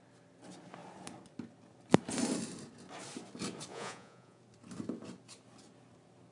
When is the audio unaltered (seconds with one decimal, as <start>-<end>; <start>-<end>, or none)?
0.0-3.7; 4.4-6.3